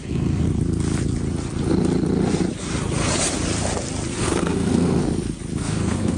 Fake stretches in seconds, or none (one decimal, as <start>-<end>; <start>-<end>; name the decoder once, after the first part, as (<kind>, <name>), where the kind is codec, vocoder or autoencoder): 0.0-0.5 (codec, SNAC); 4.2-5.0; 5.6-6.2